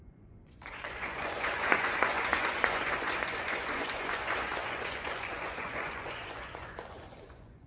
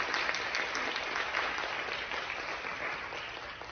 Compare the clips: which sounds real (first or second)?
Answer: second